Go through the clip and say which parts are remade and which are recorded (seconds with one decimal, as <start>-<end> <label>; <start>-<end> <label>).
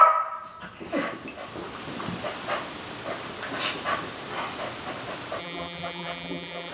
0.0-5.4 recorded; 5.4-6.7 remade